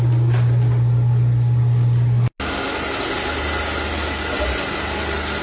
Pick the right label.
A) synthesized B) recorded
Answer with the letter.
B